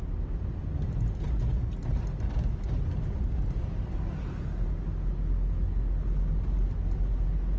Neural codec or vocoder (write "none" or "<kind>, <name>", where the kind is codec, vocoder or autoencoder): none